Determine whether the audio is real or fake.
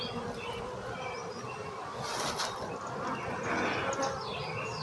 real